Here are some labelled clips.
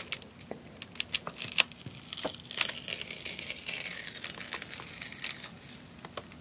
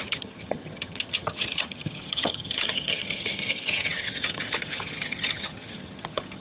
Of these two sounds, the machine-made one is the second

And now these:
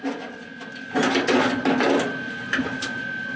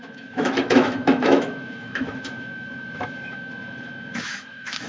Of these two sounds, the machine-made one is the second